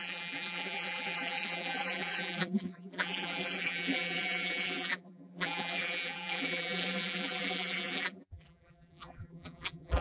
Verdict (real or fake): fake